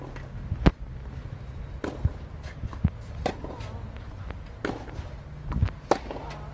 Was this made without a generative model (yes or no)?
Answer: yes